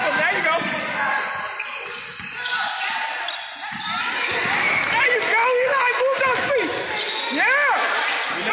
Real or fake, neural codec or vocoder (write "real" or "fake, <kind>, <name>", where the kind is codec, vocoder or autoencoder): real